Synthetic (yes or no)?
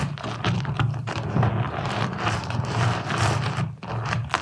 yes